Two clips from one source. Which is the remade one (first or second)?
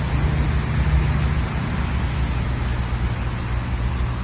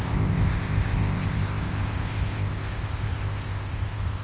second